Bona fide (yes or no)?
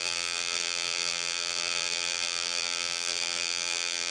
no